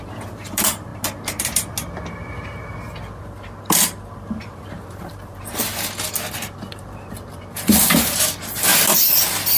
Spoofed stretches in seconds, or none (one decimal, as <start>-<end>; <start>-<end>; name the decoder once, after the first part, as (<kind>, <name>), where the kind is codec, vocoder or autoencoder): 0.0-0.9 (vocoder, BigVGAN v2); 4.4-5.7; 6.3-8.7